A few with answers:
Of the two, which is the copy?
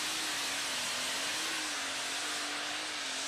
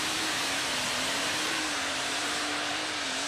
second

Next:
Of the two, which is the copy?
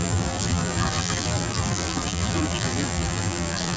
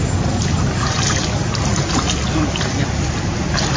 first